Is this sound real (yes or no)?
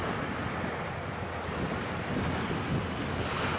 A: yes